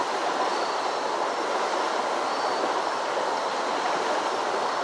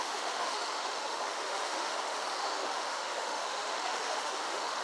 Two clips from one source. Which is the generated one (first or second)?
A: second